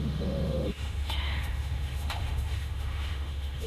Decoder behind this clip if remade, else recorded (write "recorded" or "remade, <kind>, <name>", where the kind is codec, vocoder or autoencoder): remade, autoencoder, DAC-VAE